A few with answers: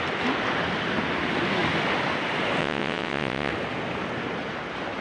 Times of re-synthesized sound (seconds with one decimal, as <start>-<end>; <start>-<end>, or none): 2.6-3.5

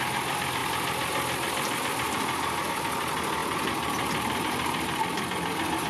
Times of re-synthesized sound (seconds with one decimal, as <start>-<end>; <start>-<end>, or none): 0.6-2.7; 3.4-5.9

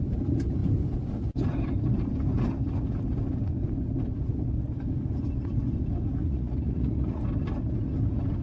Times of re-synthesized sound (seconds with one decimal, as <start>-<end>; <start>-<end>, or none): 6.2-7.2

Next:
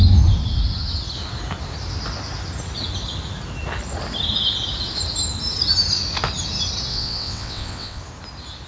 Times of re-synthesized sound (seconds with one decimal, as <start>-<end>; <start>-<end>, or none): 6.9-8.0

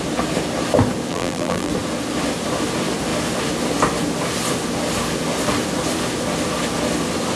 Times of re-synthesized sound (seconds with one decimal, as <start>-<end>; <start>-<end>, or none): 1.1-1.7

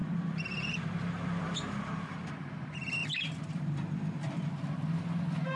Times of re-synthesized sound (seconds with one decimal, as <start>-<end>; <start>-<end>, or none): 0.0-2.3; 3.0-4.5